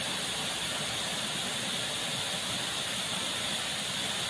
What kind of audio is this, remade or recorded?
recorded